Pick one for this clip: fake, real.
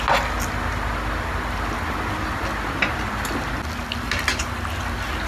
real